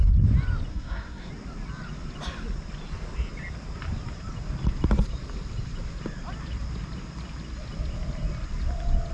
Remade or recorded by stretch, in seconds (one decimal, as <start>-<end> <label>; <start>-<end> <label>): 0.0-0.7 recorded; 0.7-1.3 remade; 1.3-9.1 recorded